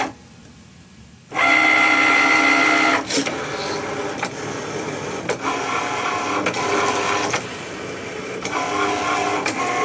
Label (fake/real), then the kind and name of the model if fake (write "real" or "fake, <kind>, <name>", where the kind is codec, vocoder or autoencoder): real